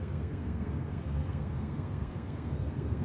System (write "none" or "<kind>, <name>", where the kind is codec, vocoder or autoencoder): codec, SNAC